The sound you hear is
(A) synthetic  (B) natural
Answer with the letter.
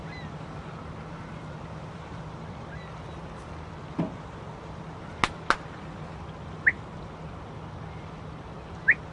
B